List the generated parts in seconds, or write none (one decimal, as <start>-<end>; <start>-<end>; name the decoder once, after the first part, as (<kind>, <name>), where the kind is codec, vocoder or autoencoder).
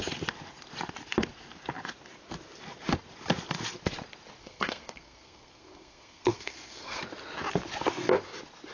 4.4-7.0 (codec, SNAC)